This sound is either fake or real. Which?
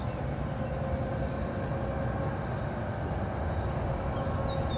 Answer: real